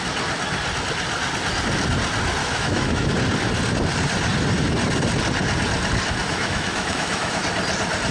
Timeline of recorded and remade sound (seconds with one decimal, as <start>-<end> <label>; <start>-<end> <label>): 0.0-2.4 recorded; 2.4-3.1 remade; 3.1-6.2 recorded; 6.2-7.4 remade; 7.4-8.1 recorded